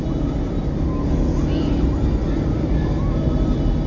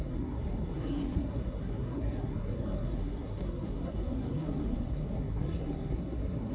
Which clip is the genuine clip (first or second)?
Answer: first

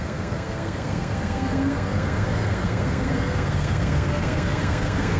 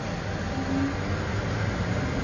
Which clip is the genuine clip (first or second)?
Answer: second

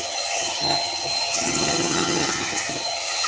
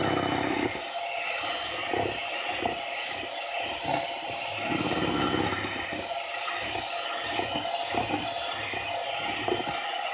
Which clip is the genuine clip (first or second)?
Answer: second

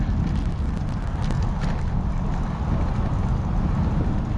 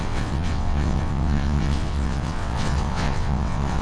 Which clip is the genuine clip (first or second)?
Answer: first